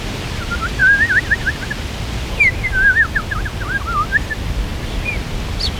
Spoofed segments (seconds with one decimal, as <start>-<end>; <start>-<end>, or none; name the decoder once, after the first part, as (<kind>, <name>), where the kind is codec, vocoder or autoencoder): none